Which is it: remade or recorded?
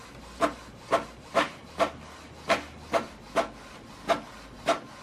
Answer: recorded